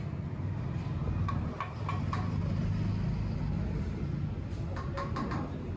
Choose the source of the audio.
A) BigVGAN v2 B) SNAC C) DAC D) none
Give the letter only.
D